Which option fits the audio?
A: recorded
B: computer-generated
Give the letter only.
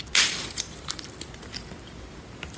A